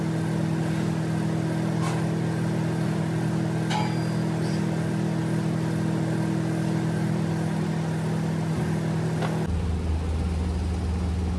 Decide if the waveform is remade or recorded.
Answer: recorded